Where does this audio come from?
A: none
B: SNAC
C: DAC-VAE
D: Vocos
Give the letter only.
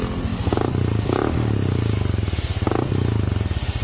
A